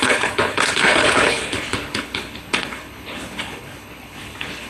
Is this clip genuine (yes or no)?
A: no